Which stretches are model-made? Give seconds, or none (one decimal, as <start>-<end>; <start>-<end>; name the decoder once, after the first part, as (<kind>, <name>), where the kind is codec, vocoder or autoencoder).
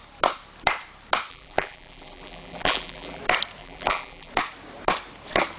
1.3-3.2 (vocoder, BigVGAN v2); 3.6-4.3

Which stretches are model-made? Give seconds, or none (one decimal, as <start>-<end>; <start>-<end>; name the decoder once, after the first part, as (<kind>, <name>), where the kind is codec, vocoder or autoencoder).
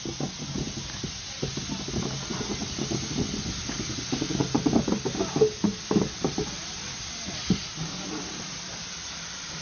2.6-3.2 (vocoder, BigVGAN v2); 7.9-9.1